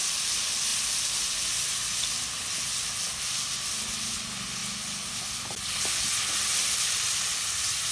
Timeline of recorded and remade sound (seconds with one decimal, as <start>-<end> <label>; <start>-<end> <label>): 0.0-7.9 recorded